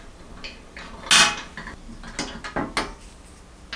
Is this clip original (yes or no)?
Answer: yes